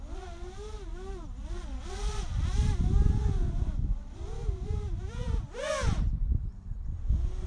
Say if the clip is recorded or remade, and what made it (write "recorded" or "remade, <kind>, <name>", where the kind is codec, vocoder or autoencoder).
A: recorded